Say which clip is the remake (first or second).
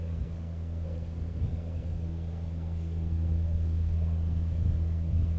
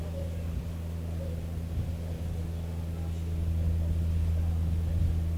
first